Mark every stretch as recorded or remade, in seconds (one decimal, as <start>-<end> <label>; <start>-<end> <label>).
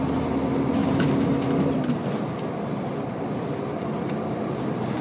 0.0-0.8 remade; 0.8-3.2 recorded; 3.2-5.0 remade